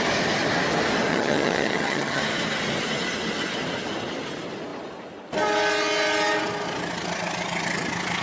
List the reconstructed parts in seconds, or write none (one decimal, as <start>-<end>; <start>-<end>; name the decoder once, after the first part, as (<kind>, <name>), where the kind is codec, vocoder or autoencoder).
1.1-2.2 (vocoder, HiFi-GAN)